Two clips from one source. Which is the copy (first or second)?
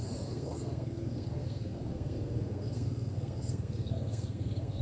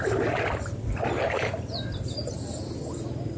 first